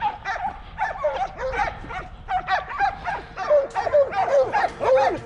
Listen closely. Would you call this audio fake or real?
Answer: real